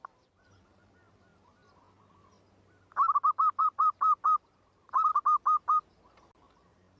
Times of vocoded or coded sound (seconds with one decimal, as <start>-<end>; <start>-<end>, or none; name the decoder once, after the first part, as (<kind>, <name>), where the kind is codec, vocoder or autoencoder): 0.0-1.6 (vocoder, BigVGAN v2); 3.6-5.1; 6.2-7.0